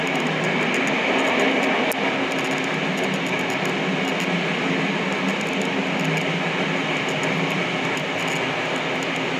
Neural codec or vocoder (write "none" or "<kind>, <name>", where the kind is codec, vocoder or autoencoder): none